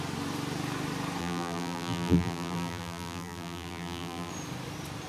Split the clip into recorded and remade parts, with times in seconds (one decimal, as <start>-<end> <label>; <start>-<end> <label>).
0.0-1.2 recorded; 1.2-4.3 remade; 4.3-5.1 recorded